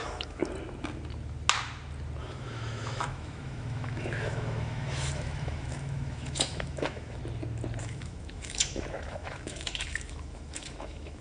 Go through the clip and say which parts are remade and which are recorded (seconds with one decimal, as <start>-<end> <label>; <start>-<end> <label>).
0.0-0.4 remade; 0.4-2.2 recorded; 2.2-7.2 remade; 7.2-7.8 recorded; 7.8-11.2 remade